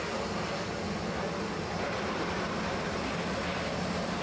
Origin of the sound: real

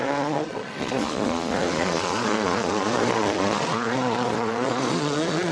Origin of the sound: fake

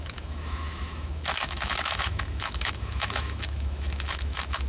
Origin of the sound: fake